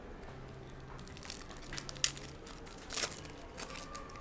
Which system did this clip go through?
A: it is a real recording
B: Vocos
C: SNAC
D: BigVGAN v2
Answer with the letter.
A